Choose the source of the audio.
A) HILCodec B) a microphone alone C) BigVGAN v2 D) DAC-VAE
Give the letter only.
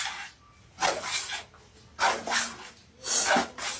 B